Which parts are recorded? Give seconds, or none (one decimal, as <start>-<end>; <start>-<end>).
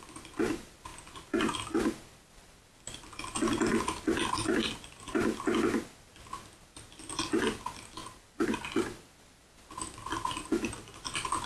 0.0-11.5